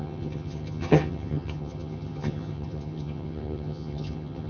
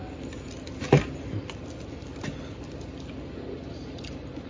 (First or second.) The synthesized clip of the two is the first